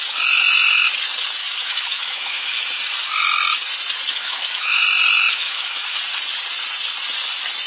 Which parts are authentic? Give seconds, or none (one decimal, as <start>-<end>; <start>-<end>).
0.0-1.4; 2.6-4.1; 4.8-5.3; 6.0-7.7